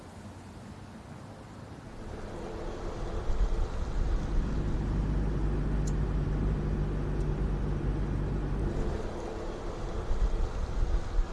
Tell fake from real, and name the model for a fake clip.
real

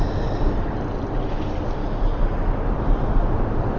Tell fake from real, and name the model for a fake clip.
real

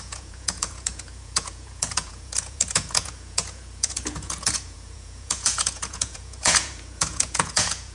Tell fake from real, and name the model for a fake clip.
fake, vocoder, Vocos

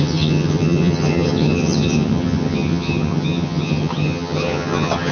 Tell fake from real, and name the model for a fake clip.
fake, vocoder, HiFi-GAN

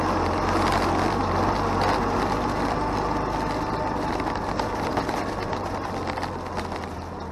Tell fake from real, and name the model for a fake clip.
real